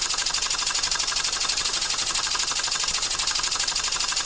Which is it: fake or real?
fake